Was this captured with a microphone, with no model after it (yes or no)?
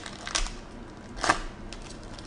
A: yes